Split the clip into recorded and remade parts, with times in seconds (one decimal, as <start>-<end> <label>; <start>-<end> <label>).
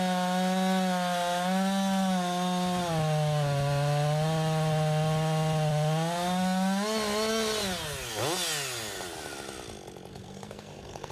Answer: 0.0-10.1 recorded; 10.1-11.1 remade